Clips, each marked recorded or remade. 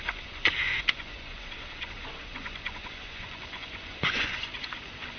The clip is remade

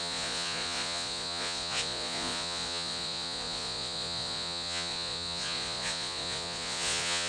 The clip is remade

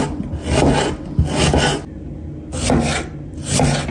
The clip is recorded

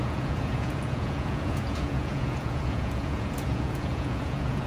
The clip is remade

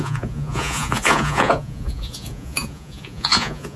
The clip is remade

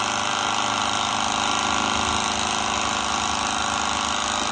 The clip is recorded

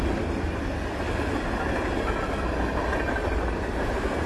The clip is recorded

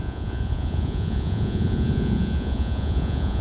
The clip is remade